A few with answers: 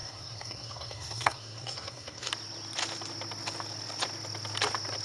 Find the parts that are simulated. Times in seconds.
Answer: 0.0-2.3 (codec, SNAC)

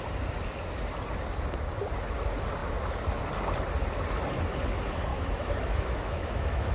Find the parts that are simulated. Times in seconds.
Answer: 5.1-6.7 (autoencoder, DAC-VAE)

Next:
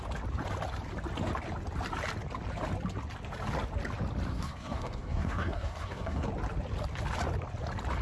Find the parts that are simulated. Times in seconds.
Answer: 4.3-6.3 (codec, SNAC)

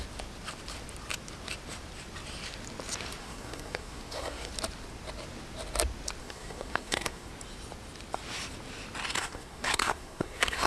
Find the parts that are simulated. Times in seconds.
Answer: 3.2-4.5 (codec, SNAC); 6.2-7.3; 9.2-10.7

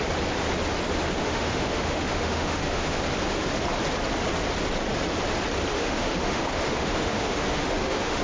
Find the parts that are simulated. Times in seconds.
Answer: 1.2-3.0 (autoencoder, DAC-VAE); 5.7-8.2

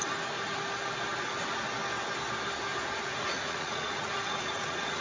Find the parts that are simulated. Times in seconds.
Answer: 3.0-5.0 (vocoder, Vocos)

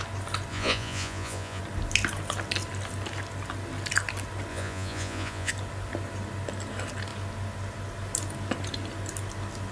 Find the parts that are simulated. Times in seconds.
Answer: 0.5-1.6 (vocoder, Vocos); 4.5-5.5

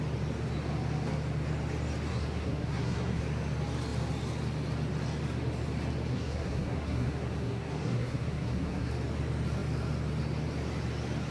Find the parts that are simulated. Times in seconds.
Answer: 2.1-3.2 (codec, SNAC); 6.1-8.9